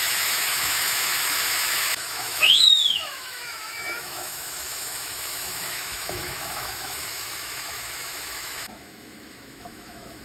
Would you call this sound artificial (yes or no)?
yes